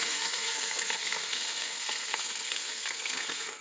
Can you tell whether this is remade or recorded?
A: remade